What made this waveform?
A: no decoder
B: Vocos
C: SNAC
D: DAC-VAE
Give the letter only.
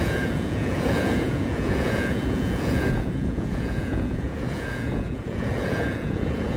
B